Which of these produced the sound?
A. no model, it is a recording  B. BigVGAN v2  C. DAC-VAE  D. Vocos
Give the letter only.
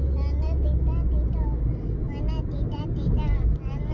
A